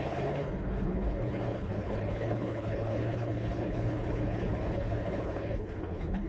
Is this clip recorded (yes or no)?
no